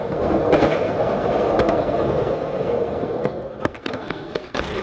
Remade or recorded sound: remade